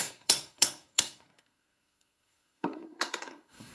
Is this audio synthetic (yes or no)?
yes